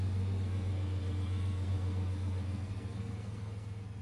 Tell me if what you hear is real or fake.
fake